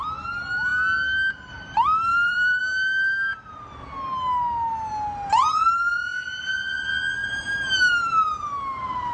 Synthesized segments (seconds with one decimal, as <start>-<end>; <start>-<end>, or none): 2.1-2.6; 7.2-8.5